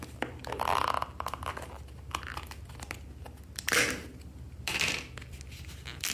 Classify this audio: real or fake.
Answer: real